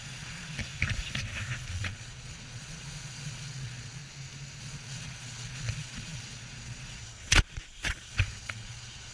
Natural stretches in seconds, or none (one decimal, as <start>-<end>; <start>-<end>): 0.6-1.7; 4.0-4.6